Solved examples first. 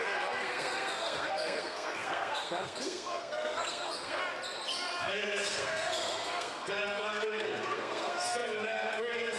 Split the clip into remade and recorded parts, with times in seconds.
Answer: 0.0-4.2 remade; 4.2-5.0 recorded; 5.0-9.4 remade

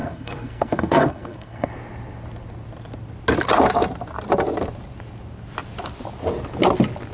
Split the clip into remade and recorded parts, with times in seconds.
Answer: 0.0-1.7 remade; 1.7-7.1 recorded

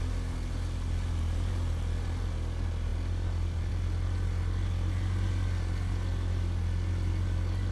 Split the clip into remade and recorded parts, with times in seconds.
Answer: 0.0-7.7 recorded